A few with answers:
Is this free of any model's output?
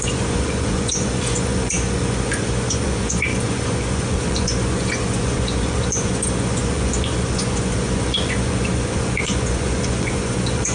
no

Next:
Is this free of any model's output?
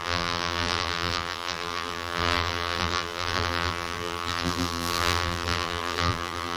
no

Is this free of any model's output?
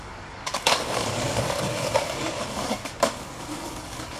no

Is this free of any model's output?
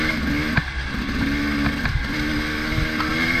yes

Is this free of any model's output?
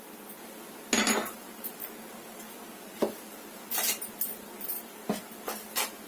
yes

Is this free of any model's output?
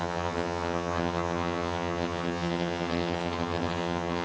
no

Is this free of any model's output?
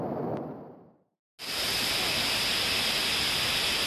yes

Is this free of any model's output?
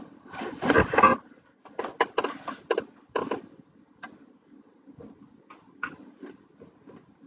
yes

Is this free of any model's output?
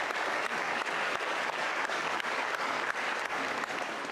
no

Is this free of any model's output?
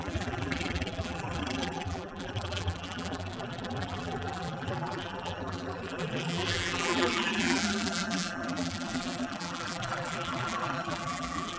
no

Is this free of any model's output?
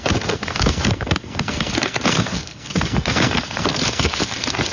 no